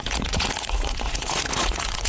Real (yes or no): no